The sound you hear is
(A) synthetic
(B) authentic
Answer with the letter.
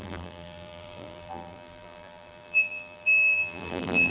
A